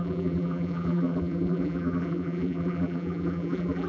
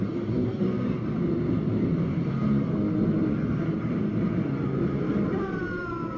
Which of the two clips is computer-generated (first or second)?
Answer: first